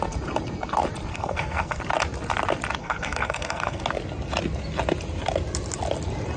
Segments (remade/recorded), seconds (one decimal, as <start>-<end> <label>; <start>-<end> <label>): 0.0-1.1 recorded; 1.1-1.8 remade; 1.8-2.8 recorded; 2.8-3.8 remade; 3.8-6.4 recorded